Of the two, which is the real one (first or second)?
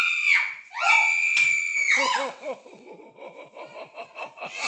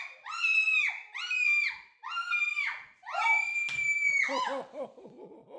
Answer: second